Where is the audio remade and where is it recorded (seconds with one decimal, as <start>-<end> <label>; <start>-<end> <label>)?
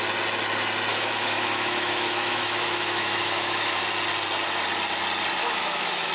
0.0-0.9 recorded; 0.9-3.8 remade; 3.8-5.4 recorded; 5.4-6.1 remade